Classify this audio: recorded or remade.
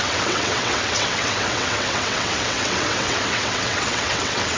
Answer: remade